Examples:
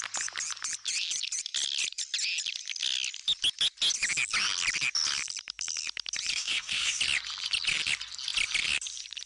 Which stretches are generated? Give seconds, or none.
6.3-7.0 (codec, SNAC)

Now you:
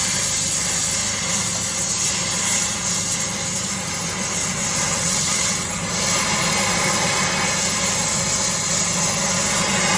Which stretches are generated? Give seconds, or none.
4.4-5.7 (vocoder, WaveNeXt)

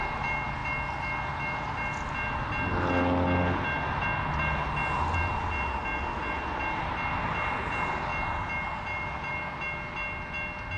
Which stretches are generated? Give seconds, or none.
none